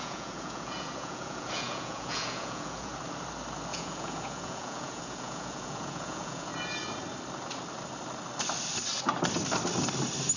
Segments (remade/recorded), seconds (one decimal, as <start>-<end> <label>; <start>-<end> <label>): 0.0-2.9 remade; 2.9-3.7 recorded; 3.7-6.5 remade; 6.5-10.4 recorded